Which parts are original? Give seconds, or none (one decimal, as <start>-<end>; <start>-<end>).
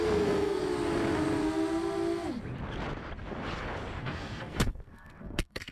0.6-4.0